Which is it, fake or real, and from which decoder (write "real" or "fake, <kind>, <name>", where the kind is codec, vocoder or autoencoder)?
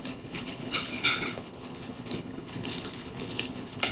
fake, codec, HILCodec